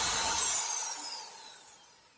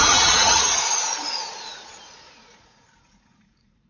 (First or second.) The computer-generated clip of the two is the second